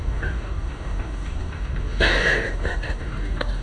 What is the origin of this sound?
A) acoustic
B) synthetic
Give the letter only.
B